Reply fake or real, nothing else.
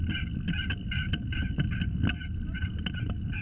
real